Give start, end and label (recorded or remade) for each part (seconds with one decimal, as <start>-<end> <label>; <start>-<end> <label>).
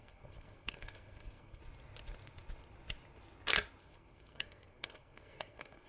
0.0-1.6 remade; 1.6-3.8 recorded; 3.8-5.9 remade